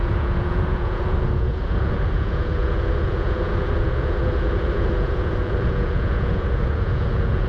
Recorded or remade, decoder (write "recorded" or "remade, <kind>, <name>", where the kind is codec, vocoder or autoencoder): remade, vocoder, Vocos